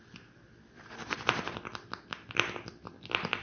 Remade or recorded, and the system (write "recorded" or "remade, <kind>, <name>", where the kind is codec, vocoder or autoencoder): recorded